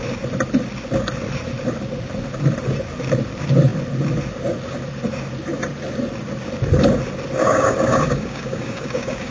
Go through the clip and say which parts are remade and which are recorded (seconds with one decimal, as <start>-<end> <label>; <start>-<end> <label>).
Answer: 0.0-7.4 recorded; 7.4-9.3 remade